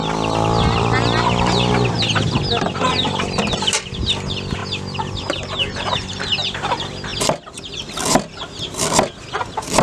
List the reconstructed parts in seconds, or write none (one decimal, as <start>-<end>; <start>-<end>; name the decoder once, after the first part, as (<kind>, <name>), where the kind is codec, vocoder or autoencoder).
2.9-3.9 (vocoder, BigVGAN v2); 7.1-7.9